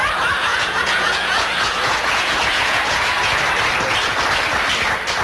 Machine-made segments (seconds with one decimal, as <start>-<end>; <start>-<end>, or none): 0.5-3.4